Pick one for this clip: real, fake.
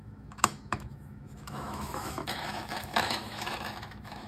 fake